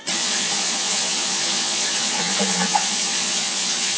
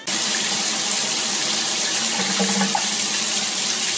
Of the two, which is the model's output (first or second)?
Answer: first